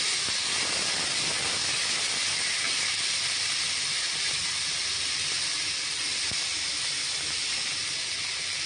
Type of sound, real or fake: real